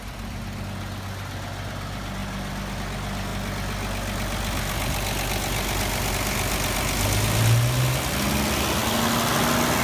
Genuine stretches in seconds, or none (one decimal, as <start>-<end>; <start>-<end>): 0.0-9.8